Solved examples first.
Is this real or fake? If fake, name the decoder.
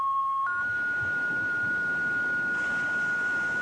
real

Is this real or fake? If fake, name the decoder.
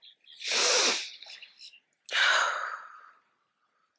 real